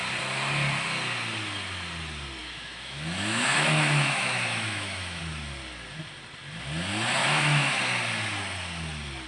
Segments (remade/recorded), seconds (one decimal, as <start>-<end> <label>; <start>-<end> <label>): 0.0-2.4 recorded; 2.4-5.2 remade; 5.2-7.2 recorded; 7.2-7.8 remade; 7.8-9.3 recorded